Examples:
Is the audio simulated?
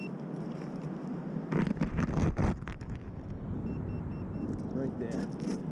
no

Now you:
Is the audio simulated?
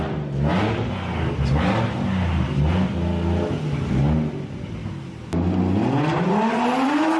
no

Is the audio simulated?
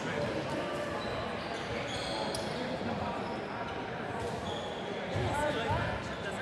no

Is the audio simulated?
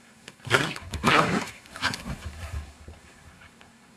yes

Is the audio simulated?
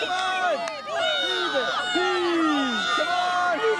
no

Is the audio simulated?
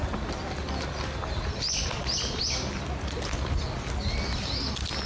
no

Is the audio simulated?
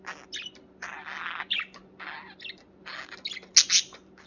no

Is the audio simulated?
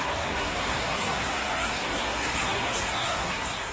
yes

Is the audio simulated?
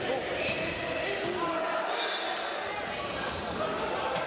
no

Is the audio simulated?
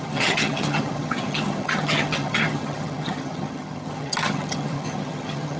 yes